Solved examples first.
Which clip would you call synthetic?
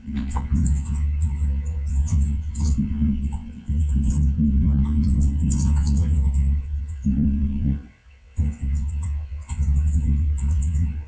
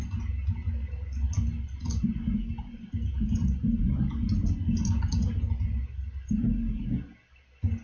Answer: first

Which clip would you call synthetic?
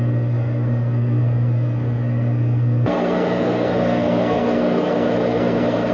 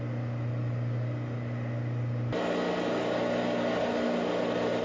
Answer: first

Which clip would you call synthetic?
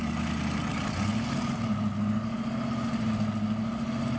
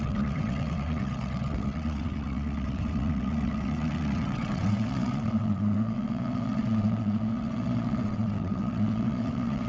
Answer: second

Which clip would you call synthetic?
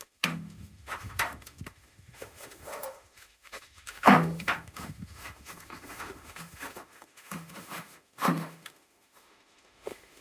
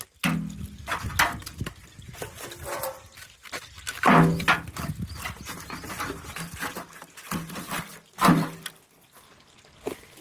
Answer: first